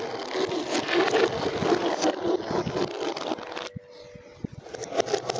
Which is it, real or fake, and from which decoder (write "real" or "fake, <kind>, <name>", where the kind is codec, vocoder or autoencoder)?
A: real